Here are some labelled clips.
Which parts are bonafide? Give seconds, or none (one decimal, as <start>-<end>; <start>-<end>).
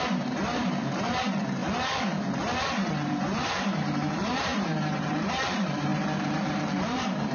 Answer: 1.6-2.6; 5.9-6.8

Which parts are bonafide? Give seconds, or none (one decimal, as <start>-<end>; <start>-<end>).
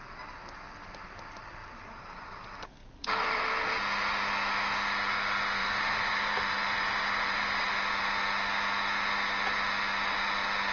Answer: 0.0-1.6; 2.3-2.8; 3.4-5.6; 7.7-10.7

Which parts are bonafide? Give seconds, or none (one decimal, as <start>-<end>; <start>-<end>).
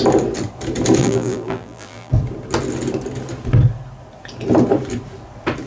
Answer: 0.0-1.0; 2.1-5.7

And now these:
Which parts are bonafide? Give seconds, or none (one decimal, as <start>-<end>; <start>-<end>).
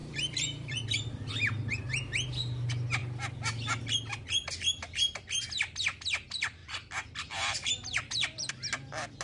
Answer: 1.8-6.6; 8.5-9.2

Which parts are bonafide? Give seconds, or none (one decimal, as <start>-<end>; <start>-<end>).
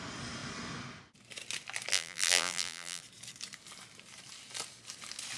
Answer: 0.0-1.9; 3.0-5.4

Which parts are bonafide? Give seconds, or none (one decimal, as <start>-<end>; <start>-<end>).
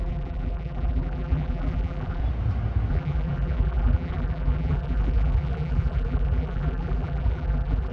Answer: 2.2-2.9